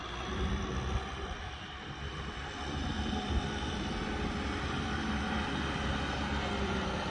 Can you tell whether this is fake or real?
fake